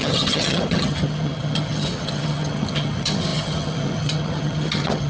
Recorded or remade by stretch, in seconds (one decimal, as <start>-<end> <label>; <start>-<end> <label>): 0.0-5.1 remade